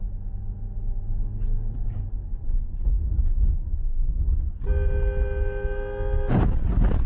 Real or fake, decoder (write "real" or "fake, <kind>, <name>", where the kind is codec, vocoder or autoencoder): real